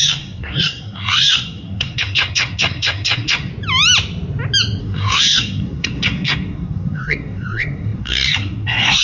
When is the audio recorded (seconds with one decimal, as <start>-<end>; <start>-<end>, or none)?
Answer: 3.5-4.8